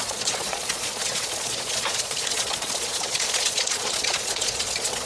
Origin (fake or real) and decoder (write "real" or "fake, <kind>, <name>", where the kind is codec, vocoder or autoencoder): fake, vocoder, Vocos